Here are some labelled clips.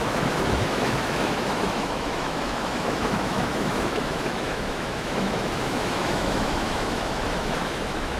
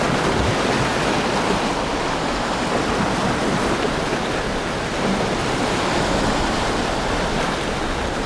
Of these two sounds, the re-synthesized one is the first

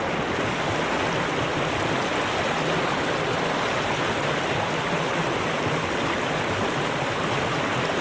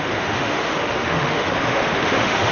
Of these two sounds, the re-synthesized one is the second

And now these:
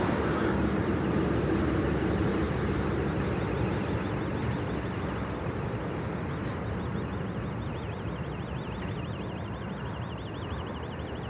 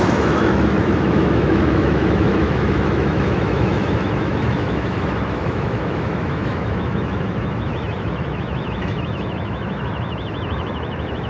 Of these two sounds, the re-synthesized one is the second